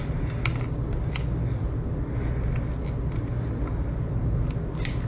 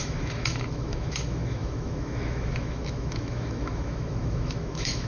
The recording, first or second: first